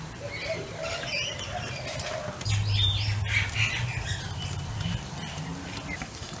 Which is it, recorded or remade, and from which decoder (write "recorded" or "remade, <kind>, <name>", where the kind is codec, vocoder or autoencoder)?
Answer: recorded